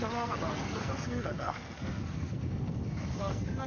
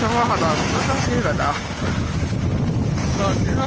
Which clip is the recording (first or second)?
second